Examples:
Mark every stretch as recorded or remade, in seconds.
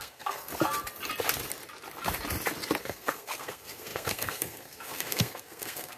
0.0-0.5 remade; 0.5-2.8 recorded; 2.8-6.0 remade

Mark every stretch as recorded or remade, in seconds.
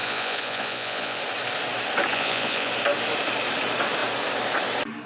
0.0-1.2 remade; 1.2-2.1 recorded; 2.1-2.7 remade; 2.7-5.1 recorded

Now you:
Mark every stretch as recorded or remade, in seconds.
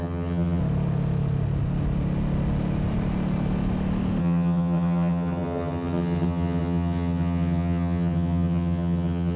0.0-0.6 remade; 0.6-4.2 recorded; 4.2-9.4 remade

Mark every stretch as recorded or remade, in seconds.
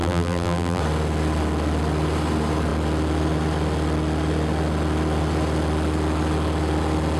0.0-0.8 remade; 0.8-7.2 recorded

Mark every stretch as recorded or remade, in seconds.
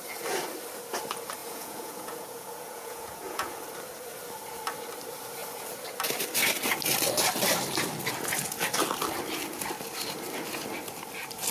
0.0-1.4 recorded; 1.4-3.5 remade; 3.5-11.5 recorded